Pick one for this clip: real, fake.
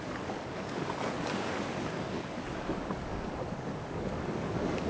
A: fake